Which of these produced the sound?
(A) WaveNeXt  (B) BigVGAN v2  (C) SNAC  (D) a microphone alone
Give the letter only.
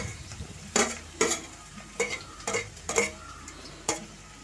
B